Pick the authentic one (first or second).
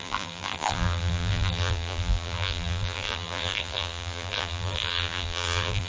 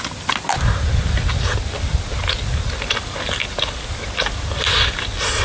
second